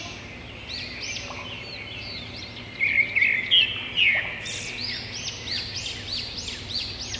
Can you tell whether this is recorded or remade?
recorded